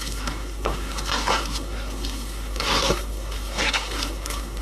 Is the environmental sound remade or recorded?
remade